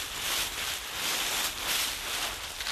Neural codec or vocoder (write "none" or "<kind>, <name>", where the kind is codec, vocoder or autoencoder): none